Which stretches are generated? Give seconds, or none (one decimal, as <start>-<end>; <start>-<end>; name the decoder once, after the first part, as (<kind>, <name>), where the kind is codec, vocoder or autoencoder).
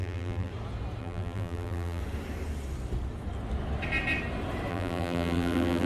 0.0-0.5 (vocoder, BigVGAN v2); 1.0-2.0; 4.7-5.9